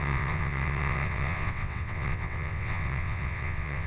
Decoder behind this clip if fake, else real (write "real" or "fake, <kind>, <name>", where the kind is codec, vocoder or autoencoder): fake, vocoder, WaveNeXt